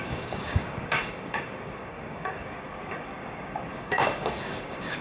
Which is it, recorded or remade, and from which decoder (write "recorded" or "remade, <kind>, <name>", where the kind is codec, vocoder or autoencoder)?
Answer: remade, codec, DAC